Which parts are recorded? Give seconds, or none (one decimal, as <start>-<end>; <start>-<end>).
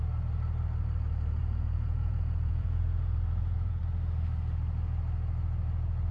0.0-1.4; 3.8-6.1